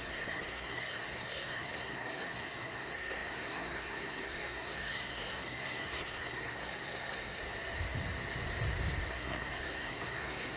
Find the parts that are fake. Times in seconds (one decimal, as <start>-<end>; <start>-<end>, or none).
0.0-7.4; 9.1-10.6